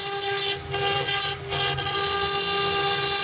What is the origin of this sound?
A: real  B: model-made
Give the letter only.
A